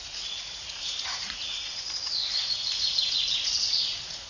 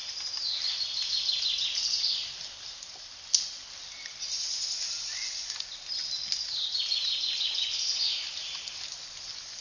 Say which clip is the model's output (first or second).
first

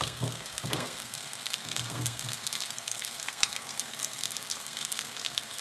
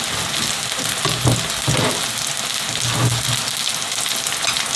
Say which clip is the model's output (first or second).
first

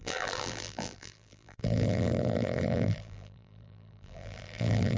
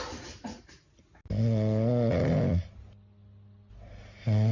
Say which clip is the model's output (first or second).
first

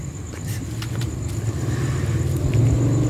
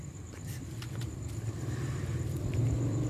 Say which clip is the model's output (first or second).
second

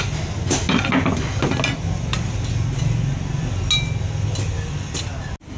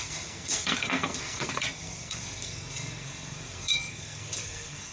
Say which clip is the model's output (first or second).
second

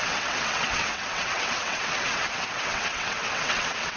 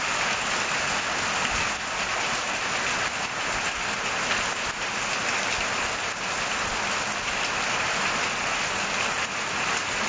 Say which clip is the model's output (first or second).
first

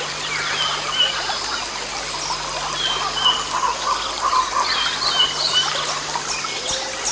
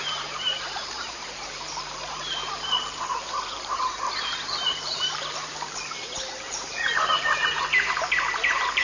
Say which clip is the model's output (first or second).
second